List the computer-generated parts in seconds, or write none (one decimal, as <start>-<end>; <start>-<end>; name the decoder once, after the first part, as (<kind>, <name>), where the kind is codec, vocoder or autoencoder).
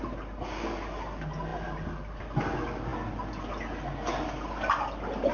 none